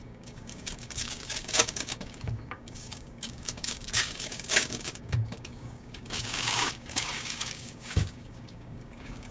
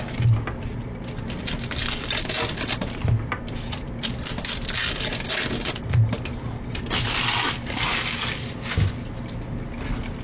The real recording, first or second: second